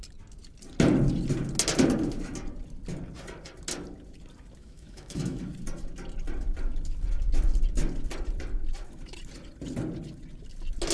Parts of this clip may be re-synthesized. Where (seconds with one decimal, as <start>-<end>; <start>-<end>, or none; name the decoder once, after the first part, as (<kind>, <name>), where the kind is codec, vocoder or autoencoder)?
4.6-5.4 (autoencoder, DAC-VAE)